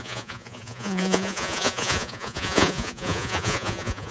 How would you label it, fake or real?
fake